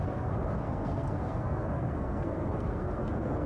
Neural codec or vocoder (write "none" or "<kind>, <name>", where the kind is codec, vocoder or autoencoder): codec, SNAC